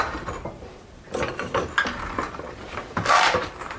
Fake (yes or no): no